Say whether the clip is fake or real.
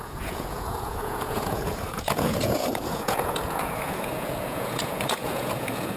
fake